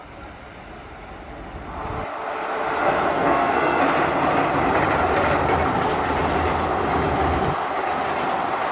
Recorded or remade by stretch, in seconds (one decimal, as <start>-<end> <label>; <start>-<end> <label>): 0.0-3.1 recorded; 3.1-3.8 remade; 3.8-8.7 recorded